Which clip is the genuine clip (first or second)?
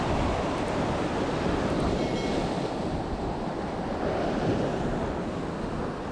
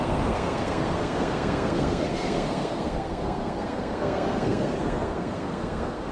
first